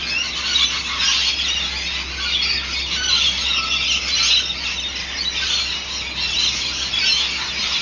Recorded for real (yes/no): yes